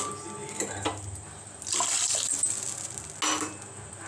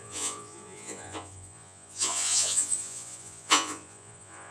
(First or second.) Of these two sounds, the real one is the first